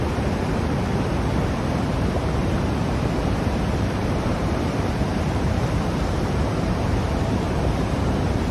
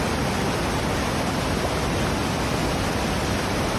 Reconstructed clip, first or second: first